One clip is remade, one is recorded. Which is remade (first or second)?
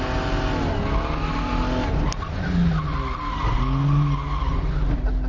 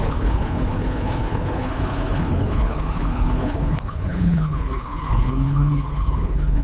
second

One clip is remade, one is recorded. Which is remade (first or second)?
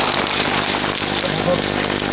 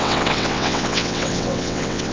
second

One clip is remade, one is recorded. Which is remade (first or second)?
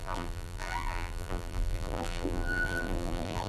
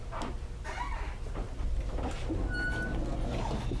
first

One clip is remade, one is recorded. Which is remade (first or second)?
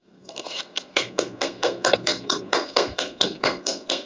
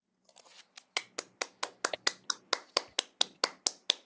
first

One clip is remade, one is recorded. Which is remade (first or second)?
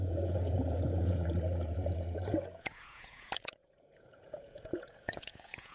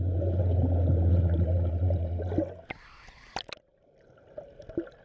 first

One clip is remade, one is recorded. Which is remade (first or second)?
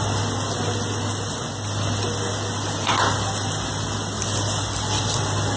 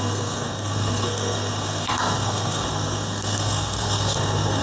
second